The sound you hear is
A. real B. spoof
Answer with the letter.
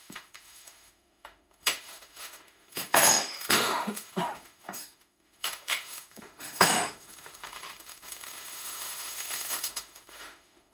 B